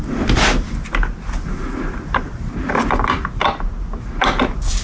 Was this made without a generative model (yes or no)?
yes